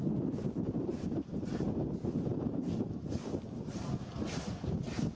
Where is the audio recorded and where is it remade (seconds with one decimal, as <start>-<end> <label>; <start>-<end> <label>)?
0.0-2.3 recorded; 2.3-3.8 remade; 3.8-5.2 recorded